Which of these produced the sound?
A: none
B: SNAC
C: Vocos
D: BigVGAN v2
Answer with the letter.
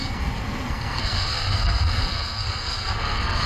B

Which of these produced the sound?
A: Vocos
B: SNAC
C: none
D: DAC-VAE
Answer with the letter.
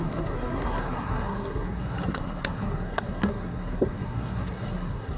B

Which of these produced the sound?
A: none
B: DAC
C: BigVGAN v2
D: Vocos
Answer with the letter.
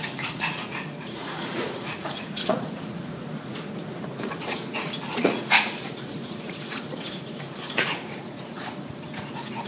D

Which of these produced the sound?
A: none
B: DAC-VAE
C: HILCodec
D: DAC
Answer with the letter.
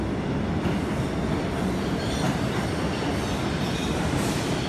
A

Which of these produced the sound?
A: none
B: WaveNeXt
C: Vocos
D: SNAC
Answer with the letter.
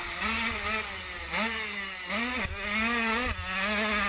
A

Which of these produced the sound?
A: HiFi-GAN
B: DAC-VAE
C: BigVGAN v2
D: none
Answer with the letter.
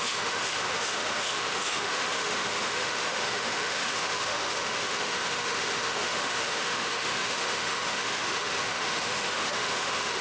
B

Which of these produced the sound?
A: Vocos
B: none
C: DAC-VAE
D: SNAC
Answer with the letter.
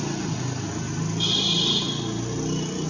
B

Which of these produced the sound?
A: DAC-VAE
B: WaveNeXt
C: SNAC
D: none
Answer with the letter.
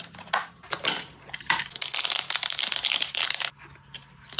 D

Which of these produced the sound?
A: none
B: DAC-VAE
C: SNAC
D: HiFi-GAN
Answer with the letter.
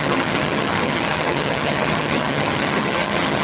D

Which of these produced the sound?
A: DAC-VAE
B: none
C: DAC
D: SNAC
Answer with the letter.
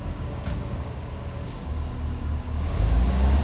C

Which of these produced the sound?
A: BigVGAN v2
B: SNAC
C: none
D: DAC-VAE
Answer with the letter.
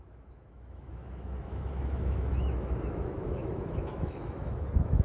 D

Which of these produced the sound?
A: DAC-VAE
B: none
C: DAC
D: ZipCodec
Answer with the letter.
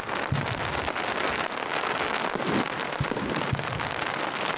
B